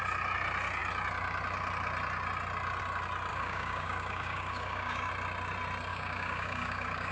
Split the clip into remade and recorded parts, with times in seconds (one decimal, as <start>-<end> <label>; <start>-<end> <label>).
0.0-3.3 recorded; 3.3-5.1 remade; 5.1-5.9 recorded; 5.9-7.1 remade